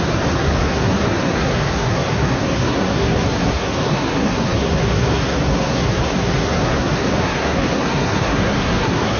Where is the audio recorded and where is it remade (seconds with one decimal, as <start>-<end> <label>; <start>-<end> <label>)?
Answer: 0.0-9.2 remade